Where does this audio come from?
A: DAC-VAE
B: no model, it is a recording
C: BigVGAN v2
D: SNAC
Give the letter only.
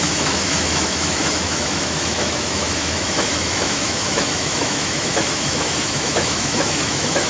A